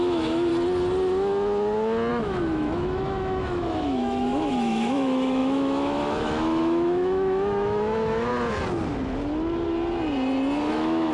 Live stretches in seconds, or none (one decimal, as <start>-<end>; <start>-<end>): 0.5-2.1; 8.3-10.7